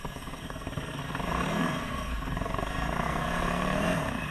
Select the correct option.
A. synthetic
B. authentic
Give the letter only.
A